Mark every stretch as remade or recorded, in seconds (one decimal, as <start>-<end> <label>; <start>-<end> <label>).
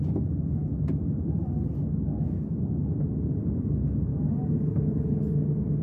0.0-4.1 recorded; 4.1-5.2 remade; 5.2-5.8 recorded